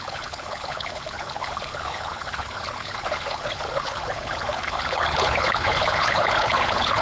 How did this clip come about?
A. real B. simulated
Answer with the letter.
B